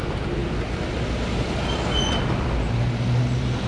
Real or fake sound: real